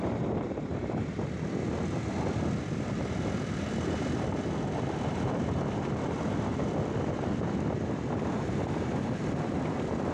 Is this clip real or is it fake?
fake